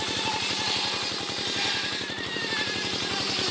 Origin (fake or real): real